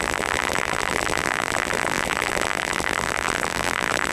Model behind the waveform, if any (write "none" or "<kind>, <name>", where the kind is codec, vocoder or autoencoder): vocoder, BigVGAN v2